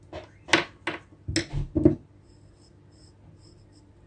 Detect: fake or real real